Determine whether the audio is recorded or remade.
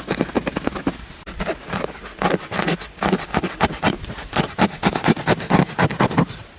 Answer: recorded